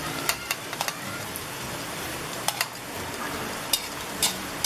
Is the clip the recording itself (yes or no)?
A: no